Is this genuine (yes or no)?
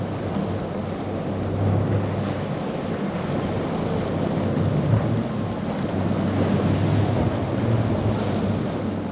yes